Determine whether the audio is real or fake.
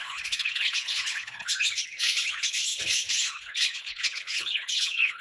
fake